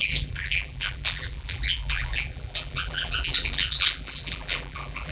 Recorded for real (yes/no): no